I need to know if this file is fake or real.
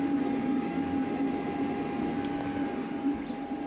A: real